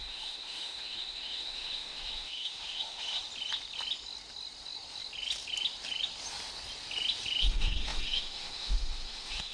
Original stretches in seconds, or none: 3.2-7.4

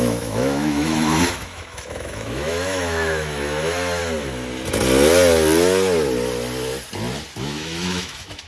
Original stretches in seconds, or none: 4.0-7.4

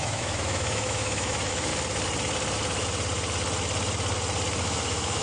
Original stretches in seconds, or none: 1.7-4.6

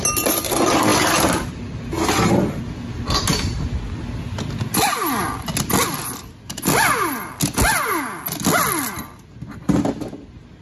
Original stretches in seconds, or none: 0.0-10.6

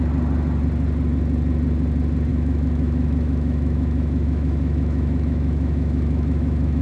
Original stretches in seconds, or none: 0.0-2.3

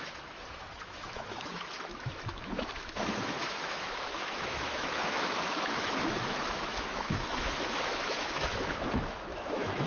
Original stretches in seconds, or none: none